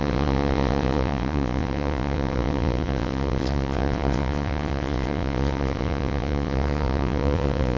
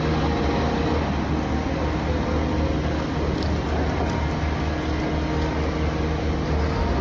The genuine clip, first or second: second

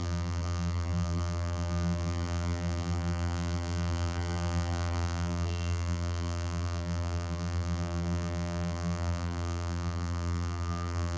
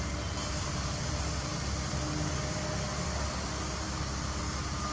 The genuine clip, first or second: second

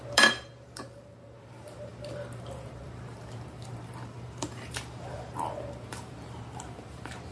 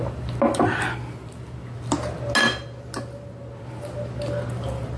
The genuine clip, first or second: second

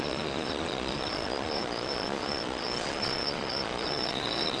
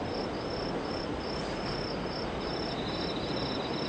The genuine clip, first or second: second